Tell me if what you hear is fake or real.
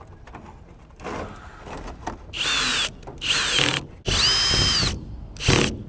real